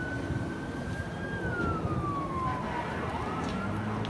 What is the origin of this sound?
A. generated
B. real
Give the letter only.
B